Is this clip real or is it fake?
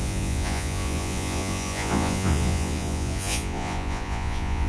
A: fake